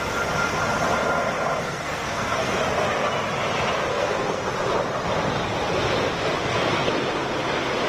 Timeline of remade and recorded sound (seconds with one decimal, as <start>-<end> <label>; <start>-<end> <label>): 0.0-1.6 recorded; 1.6-2.6 remade; 2.6-3.9 recorded; 3.9-4.5 remade; 4.5-6.4 recorded; 6.4-6.9 remade; 6.9-7.9 recorded